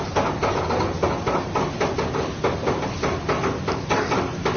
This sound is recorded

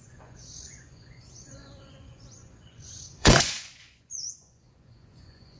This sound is remade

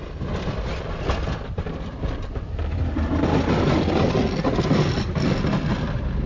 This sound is recorded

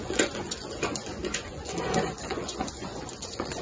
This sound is remade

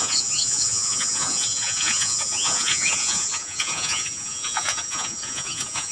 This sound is remade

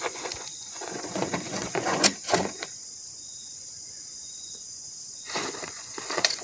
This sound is remade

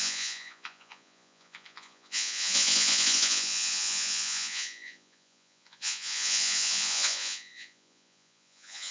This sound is remade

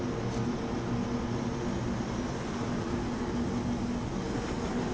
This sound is recorded